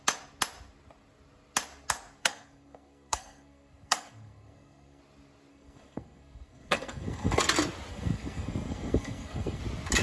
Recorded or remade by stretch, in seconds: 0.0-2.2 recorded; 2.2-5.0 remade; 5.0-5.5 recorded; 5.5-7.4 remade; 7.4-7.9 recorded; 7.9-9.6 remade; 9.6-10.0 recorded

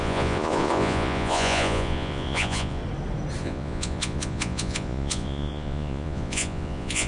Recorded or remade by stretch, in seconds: 0.0-2.8 remade; 2.8-3.4 recorded; 3.4-7.1 remade